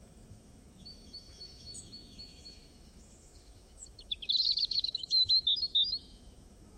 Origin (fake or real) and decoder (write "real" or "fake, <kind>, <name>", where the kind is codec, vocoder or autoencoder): fake, autoencoder, DAC-VAE